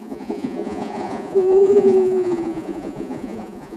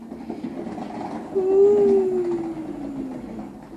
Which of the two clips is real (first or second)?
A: second